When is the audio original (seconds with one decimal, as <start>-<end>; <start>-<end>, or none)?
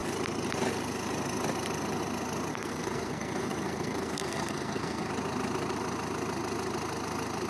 0.0-2.5; 5.1-7.5